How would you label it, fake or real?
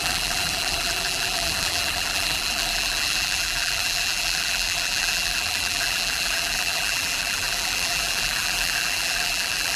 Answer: fake